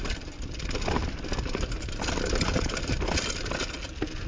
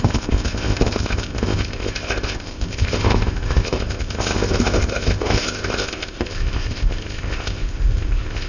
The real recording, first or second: first